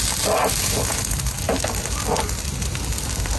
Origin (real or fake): real